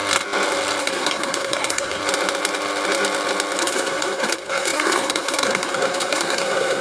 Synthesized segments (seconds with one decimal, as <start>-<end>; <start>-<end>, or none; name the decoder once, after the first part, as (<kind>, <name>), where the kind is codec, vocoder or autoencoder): 0.8-2.0 (codec, SNAC); 3.6-6.8